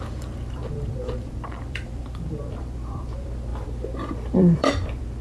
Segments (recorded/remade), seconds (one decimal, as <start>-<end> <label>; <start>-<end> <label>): 0.0-5.2 remade